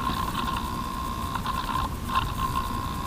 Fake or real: real